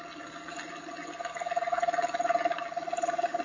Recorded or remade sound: recorded